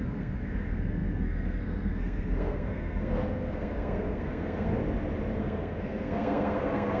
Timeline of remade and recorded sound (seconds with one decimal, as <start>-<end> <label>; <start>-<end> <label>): 0.0-4.7 remade; 4.7-5.4 recorded; 5.4-7.0 remade